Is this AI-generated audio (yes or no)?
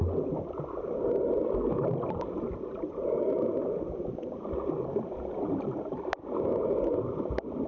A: no